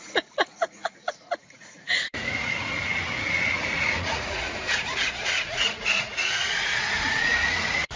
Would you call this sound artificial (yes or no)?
yes